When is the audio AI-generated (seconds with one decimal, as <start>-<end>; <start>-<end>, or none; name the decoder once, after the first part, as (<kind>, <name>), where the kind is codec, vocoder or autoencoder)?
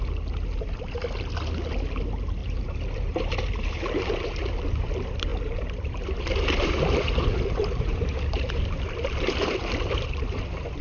2.4-4.5 (vocoder, BigVGAN v2); 5.3-9.9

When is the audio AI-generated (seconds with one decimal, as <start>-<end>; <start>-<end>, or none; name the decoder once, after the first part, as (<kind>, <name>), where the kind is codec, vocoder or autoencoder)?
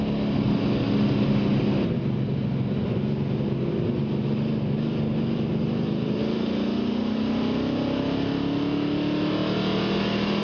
none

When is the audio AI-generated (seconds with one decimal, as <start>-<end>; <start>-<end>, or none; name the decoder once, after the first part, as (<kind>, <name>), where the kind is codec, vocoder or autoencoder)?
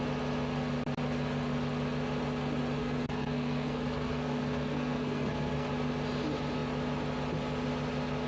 2.8-5.7 (codec, SNAC)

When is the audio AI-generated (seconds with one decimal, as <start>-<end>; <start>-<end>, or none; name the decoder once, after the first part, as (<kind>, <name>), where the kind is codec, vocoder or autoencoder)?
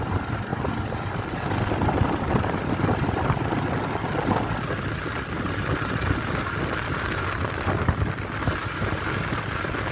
none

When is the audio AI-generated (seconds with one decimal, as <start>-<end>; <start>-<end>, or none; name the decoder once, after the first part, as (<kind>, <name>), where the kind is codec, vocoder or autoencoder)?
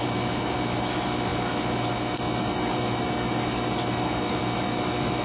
none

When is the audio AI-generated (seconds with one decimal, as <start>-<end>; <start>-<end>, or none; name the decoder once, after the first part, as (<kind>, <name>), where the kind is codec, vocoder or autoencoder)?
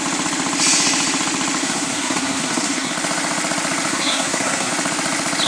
1.6-2.9 (codec, SNAC); 3.9-4.7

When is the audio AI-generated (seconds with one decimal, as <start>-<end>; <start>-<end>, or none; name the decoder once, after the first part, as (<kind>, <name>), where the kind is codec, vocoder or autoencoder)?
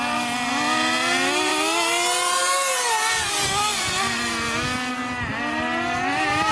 none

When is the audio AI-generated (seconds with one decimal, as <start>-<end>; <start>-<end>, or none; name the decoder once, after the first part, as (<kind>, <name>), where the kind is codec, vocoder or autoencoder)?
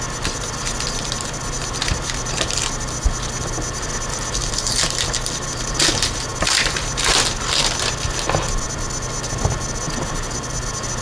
none